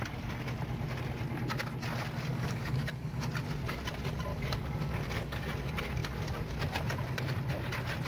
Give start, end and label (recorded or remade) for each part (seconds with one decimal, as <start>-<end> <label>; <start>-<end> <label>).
0.0-2.3 recorded; 2.3-3.3 remade; 3.3-4.3 recorded; 4.3-5.4 remade; 5.4-8.1 recorded